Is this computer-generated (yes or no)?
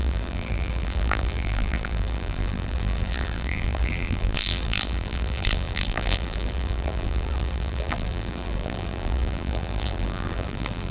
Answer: yes